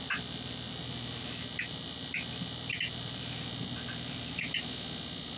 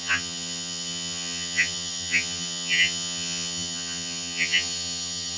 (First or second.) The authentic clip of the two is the first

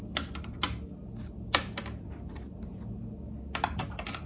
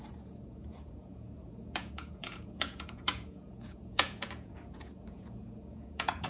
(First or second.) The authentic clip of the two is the first